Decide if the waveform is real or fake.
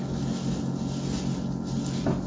real